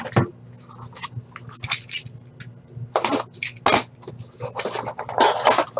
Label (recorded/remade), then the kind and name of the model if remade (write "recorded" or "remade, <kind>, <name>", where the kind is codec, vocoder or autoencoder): recorded